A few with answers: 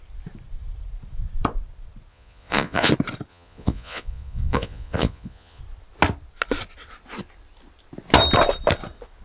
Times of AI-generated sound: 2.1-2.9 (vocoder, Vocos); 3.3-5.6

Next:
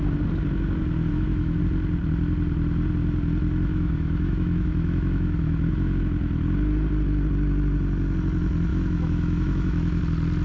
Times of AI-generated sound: 1.1-1.6 (autoencoder, DAC-VAE); 3.7-6.0; 8.7-10.0

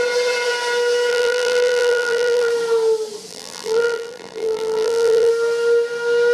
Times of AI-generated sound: 1.1-2.5 (vocoder, BigVGAN v2); 3.3-5.3

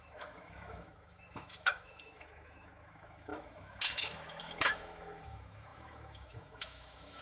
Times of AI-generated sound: 0.0-7.2 (autoencoder, DAC-VAE)